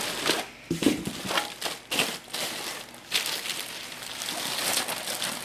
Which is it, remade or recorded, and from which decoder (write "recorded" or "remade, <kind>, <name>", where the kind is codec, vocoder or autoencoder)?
recorded